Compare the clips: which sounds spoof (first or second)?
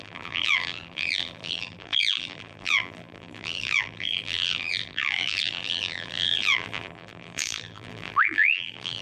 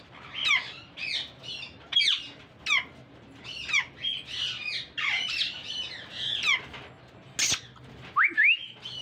first